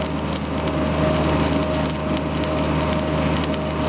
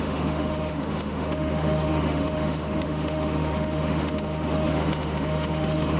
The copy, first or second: second